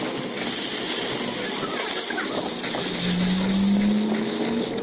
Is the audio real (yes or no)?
yes